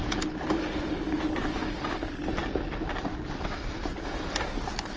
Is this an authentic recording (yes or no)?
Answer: yes